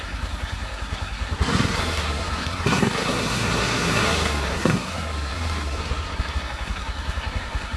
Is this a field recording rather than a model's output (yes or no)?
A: no